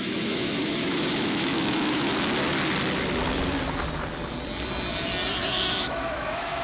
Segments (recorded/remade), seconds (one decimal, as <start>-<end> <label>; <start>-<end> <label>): 0.0-2.1 remade; 2.1-5.4 recorded; 5.4-6.6 remade